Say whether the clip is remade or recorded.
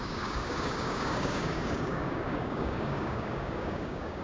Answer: remade